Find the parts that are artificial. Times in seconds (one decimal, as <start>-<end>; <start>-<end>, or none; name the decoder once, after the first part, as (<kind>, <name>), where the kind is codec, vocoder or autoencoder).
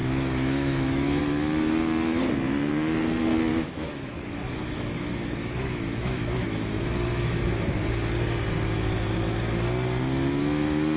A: 0.0-1.2 (autoencoder, DAC-VAE); 3.5-7.4